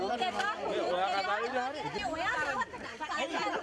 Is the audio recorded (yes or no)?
yes